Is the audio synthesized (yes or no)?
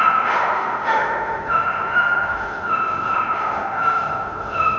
yes